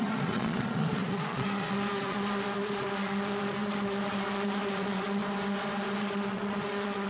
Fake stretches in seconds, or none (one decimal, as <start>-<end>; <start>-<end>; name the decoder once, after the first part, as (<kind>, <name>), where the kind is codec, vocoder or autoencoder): 0.0-5.2 (vocoder, Vocos); 6.0-7.1